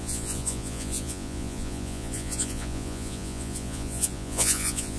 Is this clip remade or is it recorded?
remade